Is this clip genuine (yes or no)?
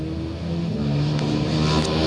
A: yes